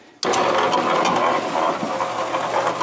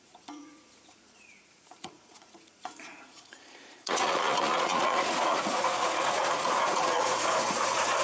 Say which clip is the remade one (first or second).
second